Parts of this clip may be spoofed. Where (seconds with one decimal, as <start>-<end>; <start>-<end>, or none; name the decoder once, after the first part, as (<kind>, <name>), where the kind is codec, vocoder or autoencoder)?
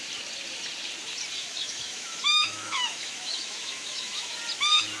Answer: 1.4-4.4 (autoencoder, DAC-VAE)